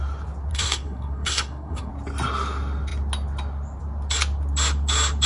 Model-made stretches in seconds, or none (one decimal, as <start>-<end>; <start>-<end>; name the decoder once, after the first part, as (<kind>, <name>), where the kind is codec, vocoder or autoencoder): 0.5-1.9 (codec, SNAC)